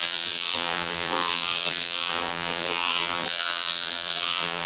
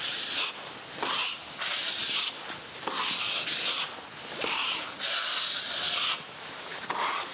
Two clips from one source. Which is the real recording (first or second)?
second